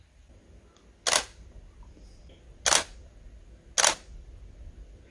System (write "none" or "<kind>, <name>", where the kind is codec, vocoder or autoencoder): none